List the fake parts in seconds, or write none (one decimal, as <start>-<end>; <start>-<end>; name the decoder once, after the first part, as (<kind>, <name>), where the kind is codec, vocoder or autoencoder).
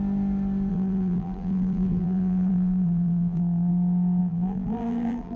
0.7-3.7 (vocoder, BigVGAN v2); 4.2-5.4